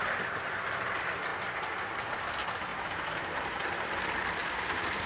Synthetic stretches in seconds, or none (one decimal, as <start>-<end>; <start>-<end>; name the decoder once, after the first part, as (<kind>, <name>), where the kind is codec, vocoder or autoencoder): 2.7-3.4 (vocoder, BigVGAN v2); 4.4-5.1